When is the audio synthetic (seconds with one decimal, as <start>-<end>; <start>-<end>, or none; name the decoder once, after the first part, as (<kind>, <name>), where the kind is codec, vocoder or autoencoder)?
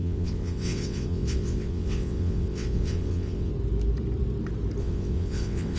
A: 0.0-3.5 (vocoder, WaveNeXt); 4.8-5.8